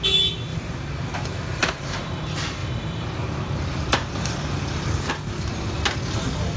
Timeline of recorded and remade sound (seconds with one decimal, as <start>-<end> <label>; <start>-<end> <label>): 0.0-0.5 recorded; 0.5-2.2 remade; 2.2-2.6 recorded; 2.6-5.1 remade; 5.1-6.6 recorded